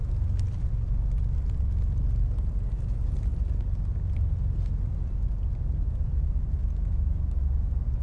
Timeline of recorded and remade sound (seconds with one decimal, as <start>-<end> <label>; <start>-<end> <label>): 0.0-8.0 recorded